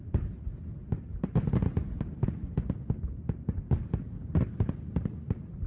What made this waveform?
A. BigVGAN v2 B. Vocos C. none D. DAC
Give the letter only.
C